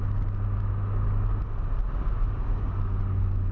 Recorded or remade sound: recorded